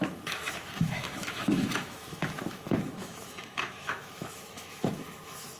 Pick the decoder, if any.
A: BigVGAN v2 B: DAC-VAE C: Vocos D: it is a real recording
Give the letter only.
B